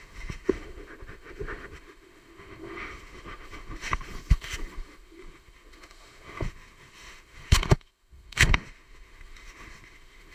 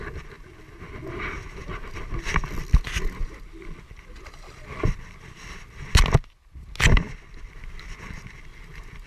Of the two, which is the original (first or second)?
second